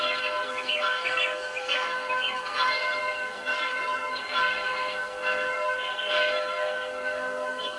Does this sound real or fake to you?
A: fake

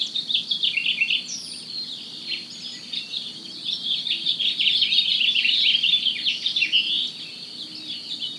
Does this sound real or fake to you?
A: real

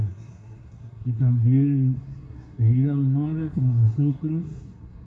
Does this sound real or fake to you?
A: fake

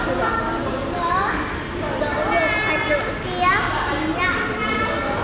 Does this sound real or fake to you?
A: real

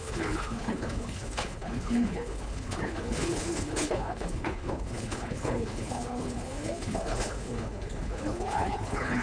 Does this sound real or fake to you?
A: fake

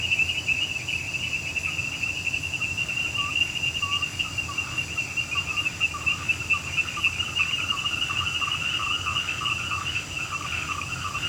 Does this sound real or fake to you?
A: real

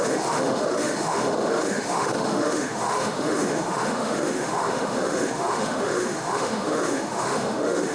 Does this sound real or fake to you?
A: fake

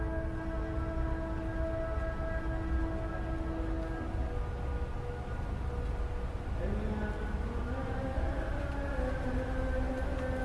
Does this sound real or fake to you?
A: real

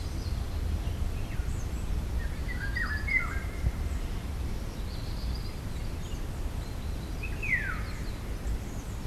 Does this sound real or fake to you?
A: fake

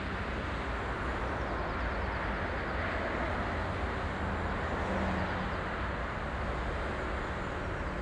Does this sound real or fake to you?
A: real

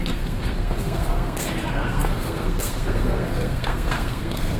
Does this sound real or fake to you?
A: fake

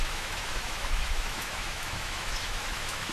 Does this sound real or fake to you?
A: fake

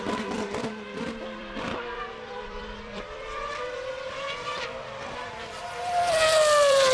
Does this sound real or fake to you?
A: fake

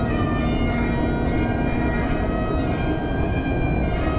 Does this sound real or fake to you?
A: real